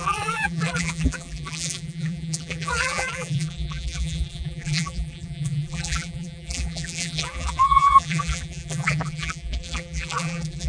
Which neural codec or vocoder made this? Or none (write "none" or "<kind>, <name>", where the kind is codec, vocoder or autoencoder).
vocoder, BigVGAN v2